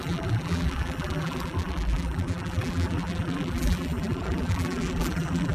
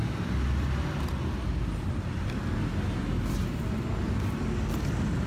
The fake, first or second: first